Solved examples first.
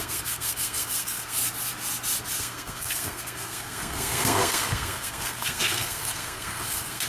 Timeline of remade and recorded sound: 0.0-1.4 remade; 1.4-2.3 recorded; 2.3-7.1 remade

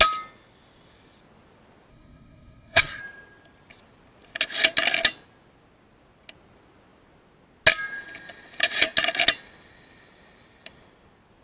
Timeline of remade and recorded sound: 0.0-1.9 recorded; 1.9-3.0 remade; 3.0-11.4 recorded

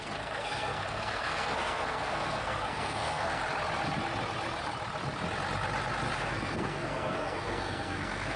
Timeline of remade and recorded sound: 0.0-3.4 remade; 3.4-6.2 recorded; 6.2-8.4 remade

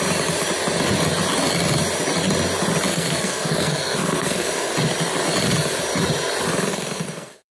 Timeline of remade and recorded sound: 0.0-2.9 recorded; 2.9-4.7 remade; 4.7-6.7 recorded; 6.7-7.5 remade

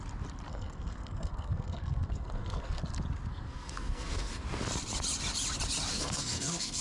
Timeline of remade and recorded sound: 0.0-0.5 recorded; 0.5-2.8 remade; 2.8-3.3 recorded; 3.3-4.4 remade; 4.4-5.9 recorded; 5.9-6.8 remade

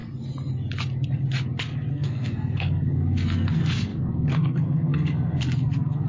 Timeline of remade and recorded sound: 0.0-1.9 recorded; 1.9-6.1 remade

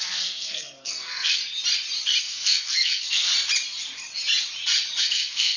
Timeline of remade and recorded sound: 0.0-1.4 remade; 1.4-2.2 recorded; 2.2-3.3 remade; 3.3-5.0 recorded; 5.0-5.6 remade

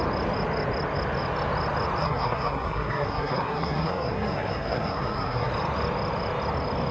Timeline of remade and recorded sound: 0.0-2.0 recorded; 2.0-5.5 remade; 5.5-6.9 recorded